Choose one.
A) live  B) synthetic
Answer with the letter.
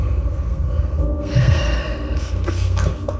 B